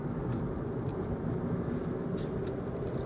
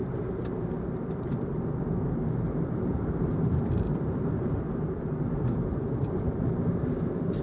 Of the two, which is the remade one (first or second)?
second